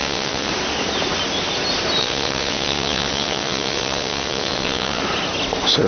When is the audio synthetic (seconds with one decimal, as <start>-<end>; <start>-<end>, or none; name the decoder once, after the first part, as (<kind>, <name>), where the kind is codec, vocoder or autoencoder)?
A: 0.0-0.5 (vocoder, WaveNeXt); 2.0-5.0